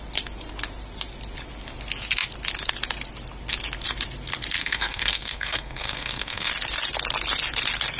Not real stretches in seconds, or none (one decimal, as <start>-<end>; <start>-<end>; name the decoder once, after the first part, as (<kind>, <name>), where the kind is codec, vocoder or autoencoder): 4.6-6.5 (codec, SNAC)

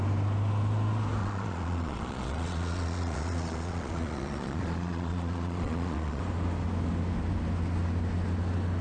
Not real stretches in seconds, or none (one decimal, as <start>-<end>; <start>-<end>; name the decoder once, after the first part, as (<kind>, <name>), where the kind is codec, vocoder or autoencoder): 1.2-6.2 (vocoder, Vocos)